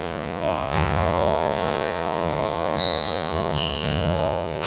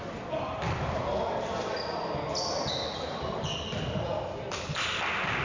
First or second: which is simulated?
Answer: first